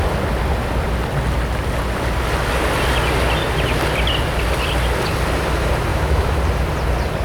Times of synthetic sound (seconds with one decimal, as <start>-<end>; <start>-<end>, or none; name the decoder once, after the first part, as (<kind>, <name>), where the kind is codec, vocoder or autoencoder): 5.9-6.4 (autoencoder, DAC-VAE)